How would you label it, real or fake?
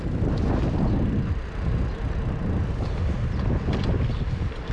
real